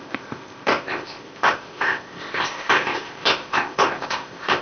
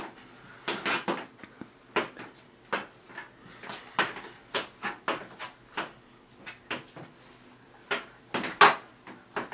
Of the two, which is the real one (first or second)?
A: second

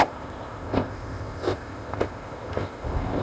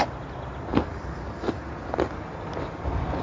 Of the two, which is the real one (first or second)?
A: second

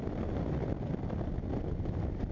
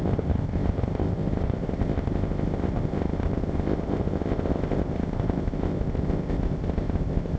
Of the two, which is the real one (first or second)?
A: first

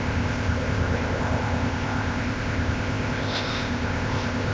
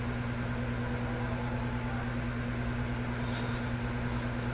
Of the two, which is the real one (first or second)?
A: second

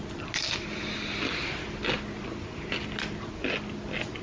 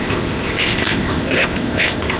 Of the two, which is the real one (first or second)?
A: first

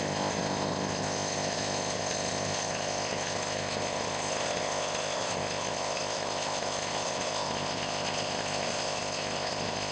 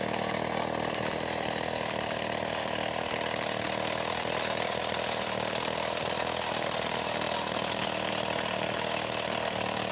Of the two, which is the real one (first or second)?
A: second